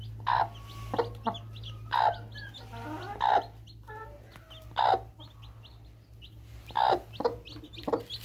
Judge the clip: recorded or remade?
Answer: recorded